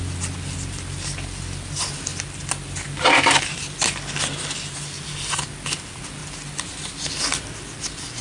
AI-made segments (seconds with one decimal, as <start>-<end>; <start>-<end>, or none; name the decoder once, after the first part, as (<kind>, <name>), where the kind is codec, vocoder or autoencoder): 6.2-6.8 (vocoder, BigVGAN v2)